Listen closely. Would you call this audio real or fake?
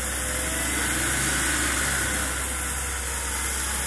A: real